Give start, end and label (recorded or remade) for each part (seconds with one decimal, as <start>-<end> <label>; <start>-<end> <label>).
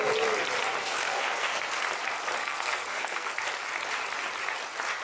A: 0.0-0.8 recorded; 0.8-1.8 remade; 1.8-2.4 recorded; 2.4-3.3 remade; 3.3-5.0 recorded